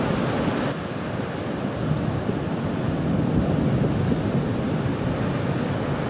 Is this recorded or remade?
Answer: recorded